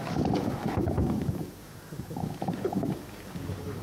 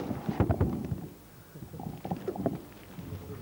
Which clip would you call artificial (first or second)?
first